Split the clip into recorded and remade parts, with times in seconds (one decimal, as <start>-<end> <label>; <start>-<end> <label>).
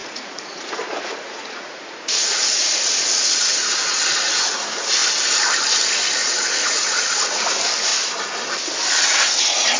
0.0-3.8 remade; 3.8-6.2 recorded; 6.2-7.4 remade; 7.4-9.8 recorded